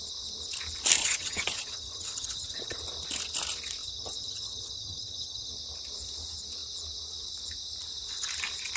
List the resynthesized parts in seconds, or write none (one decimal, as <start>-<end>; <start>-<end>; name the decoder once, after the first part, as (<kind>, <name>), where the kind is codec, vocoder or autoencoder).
1.0-2.8 (vocoder, HiFi-GAN); 3.8-5.5